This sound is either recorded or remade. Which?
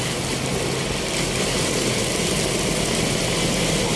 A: recorded